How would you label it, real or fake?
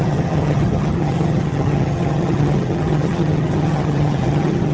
fake